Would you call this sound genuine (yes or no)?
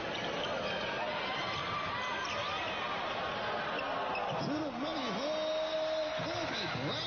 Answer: yes